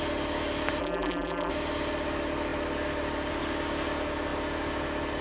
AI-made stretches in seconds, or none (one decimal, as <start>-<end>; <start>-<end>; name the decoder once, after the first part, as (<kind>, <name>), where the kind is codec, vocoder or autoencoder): 0.8-1.5 (vocoder, BigVGAN v2)